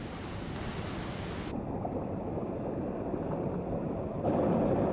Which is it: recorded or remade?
recorded